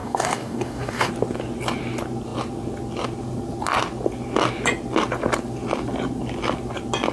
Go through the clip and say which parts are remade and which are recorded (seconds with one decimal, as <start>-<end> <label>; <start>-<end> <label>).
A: 0.0-1.1 remade; 1.1-7.1 recorded